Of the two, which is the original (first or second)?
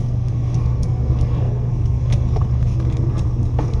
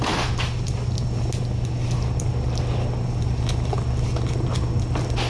second